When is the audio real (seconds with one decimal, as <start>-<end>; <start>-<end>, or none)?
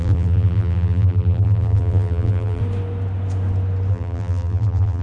2.6-3.9